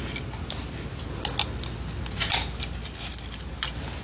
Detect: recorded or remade recorded